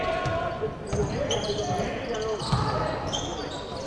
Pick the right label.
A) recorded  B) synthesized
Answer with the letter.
A